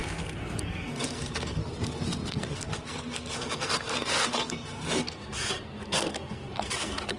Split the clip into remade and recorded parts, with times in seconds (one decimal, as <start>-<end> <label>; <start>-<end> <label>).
0.0-1.6 remade; 1.6-2.3 recorded; 2.3-7.2 remade

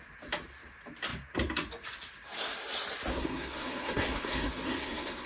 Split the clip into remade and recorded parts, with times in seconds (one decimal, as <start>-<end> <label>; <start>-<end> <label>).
0.0-3.1 recorded; 3.1-5.3 remade